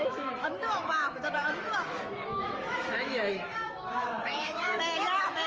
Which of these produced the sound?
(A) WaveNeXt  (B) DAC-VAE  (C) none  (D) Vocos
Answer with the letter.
B